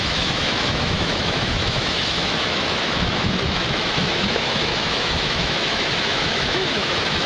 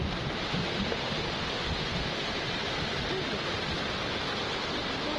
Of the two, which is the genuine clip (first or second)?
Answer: second